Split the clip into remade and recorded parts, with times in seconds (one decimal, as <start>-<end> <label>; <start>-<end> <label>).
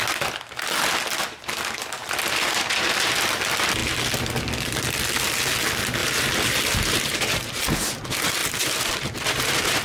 0.0-6.0 recorded; 6.0-7.4 remade; 7.4-9.8 recorded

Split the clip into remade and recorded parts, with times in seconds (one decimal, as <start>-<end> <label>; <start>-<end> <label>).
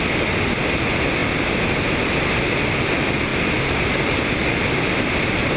0.0-5.6 recorded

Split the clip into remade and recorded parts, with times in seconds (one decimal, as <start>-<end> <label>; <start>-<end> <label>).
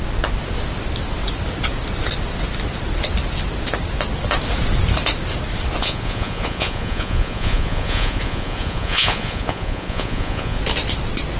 0.0-5.8 recorded; 5.8-10.6 remade; 10.6-11.4 recorded